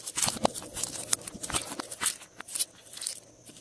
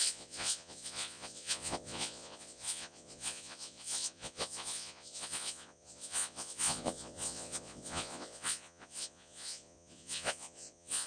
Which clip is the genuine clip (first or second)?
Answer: first